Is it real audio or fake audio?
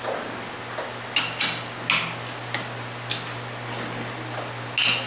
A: real